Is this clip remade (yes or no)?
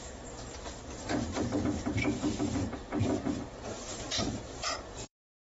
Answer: yes